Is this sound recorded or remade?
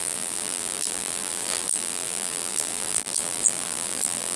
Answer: remade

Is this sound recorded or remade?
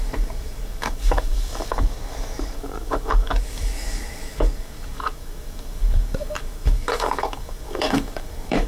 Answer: remade